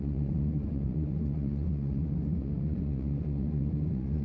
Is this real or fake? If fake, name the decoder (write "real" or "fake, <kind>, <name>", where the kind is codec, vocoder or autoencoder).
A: fake, vocoder, Vocos